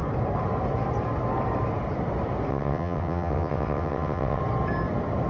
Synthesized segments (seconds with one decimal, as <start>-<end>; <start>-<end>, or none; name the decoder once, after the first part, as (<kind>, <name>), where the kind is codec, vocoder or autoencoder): 2.5-4.4 (vocoder, WaveNeXt)